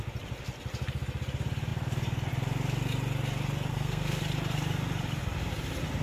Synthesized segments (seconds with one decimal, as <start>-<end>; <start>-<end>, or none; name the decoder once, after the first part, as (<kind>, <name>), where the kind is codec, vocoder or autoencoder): 3.7-4.2 (codec, SNAC)